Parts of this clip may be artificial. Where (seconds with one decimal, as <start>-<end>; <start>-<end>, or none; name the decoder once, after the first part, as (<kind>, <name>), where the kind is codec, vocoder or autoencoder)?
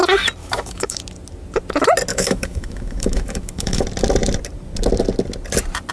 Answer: 0.4-1.0 (autoencoder, DAC-VAE); 2.1-3.8